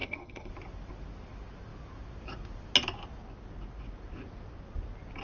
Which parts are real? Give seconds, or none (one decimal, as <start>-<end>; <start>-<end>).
0.5-5.2